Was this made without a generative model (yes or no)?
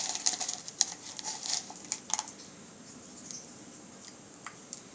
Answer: yes